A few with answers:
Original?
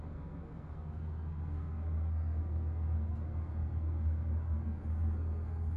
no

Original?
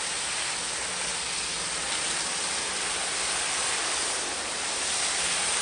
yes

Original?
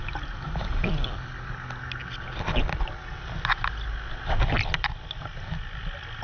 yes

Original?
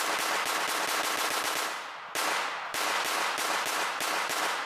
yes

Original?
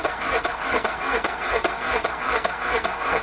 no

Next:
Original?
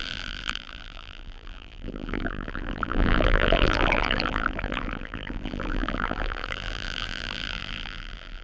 no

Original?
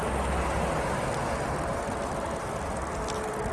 yes